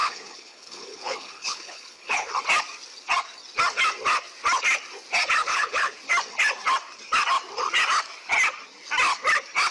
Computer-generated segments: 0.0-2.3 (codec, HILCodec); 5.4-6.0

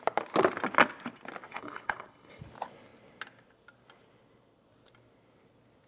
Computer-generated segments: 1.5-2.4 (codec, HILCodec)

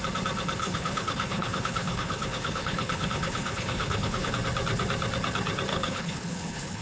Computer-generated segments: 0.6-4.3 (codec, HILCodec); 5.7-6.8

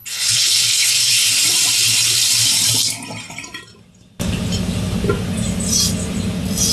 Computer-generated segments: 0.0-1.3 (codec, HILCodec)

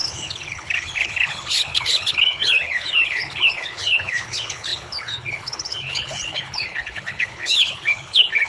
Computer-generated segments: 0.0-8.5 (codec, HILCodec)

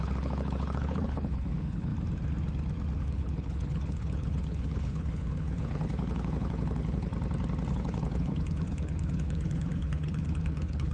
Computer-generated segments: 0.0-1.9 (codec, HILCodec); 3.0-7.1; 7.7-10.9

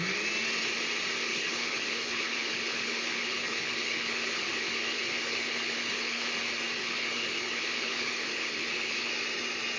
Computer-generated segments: 1.3-6.3 (codec, HILCodec); 6.8-9.1

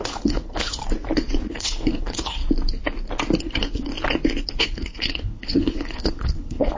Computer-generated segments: 0.0-0.8 (codec, HILCodec); 1.5-2.4; 3.4-3.9; 4.6-6.8